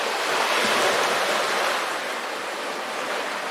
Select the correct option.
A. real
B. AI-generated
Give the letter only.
A